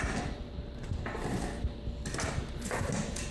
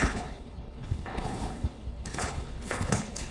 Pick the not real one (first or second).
second